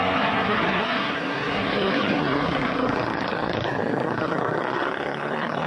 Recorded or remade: remade